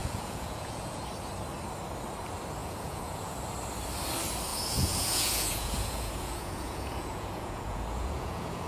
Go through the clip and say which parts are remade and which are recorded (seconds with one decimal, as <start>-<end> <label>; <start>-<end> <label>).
0.0-1.0 remade; 1.0-2.6 recorded; 2.6-3.4 remade; 3.4-4.5 recorded; 4.5-8.7 remade